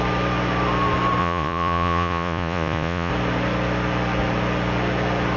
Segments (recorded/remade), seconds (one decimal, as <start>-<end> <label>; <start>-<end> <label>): 0.0-1.2 recorded; 1.2-3.1 remade; 3.1-5.4 recorded